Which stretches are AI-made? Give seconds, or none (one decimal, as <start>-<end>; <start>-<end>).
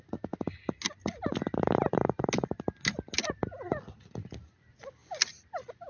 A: 5.0-5.9